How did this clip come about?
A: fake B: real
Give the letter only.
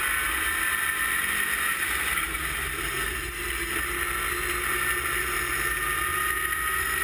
B